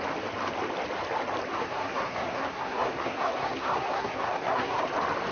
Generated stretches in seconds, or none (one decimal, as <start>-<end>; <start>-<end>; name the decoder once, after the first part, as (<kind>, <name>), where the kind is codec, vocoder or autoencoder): 1.6-4.8 (codec, SNAC)